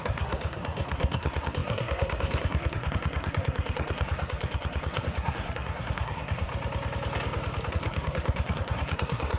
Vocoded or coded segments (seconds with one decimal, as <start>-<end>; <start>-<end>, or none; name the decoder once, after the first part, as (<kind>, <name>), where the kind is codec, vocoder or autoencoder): 0.0-6.5 (codec, SNAC); 7.7-9.4